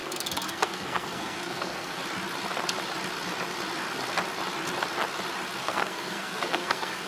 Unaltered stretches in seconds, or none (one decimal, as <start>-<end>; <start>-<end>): 2.0-5.6